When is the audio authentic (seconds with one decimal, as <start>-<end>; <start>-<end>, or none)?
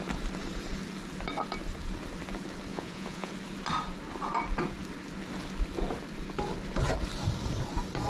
0.0-2.7; 3.3-8.1